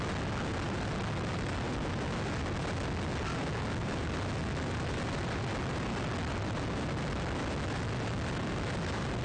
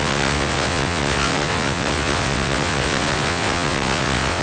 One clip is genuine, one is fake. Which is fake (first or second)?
second